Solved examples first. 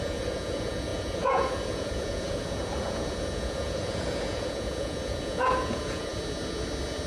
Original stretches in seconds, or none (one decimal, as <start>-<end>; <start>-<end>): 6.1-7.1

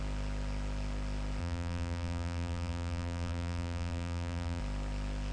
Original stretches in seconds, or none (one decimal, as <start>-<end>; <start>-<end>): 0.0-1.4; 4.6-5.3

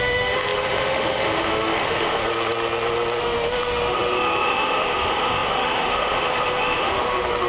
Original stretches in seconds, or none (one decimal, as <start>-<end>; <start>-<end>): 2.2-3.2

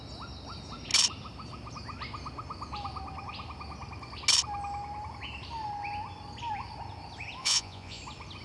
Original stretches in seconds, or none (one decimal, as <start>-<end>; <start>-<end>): 0.0-7.4; 8.0-8.4